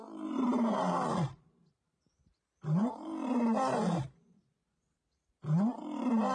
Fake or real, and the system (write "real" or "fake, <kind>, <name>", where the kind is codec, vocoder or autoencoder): fake, vocoder, BigVGAN v2